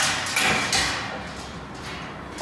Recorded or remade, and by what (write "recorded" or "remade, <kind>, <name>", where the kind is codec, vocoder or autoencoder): recorded